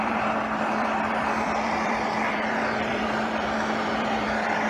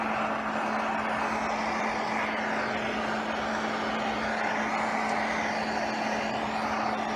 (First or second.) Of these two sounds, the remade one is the first